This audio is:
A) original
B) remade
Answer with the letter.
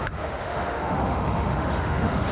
B